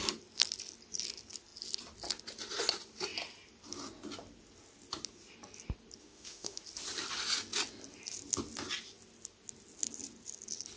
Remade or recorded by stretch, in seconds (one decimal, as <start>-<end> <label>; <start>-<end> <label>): 0.0-6.0 recorded; 6.0-6.6 remade; 6.6-10.8 recorded